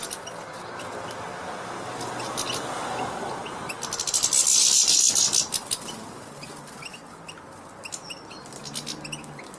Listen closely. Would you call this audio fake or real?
real